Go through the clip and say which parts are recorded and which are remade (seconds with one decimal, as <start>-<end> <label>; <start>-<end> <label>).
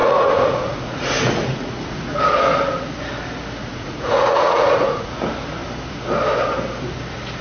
0.0-2.2 remade; 2.2-3.6 recorded; 3.6-5.1 remade; 5.1-7.4 recorded